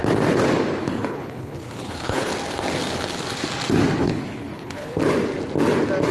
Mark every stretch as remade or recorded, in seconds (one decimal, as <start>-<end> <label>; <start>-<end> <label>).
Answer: 0.0-0.8 recorded; 0.8-2.3 remade; 2.3-4.0 recorded; 4.0-5.0 remade; 5.0-6.1 recorded